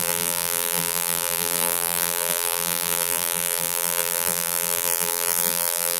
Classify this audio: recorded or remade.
remade